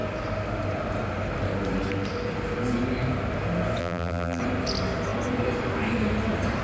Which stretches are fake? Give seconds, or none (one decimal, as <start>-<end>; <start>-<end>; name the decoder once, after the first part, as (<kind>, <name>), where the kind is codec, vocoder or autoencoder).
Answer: 3.8-4.4 (vocoder, BigVGAN v2)